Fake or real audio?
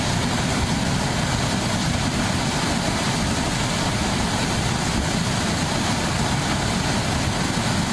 real